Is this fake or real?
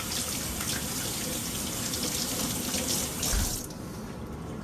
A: real